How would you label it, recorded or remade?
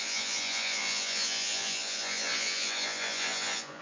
remade